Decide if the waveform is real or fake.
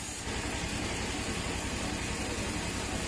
real